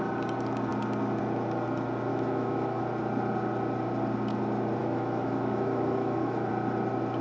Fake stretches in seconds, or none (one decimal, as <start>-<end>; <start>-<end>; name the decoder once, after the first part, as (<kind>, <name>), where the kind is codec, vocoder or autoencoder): 2.1-2.8 (autoencoder, DAC-VAE); 4.8-6.5